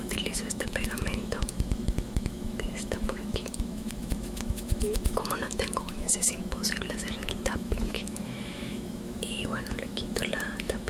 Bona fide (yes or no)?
no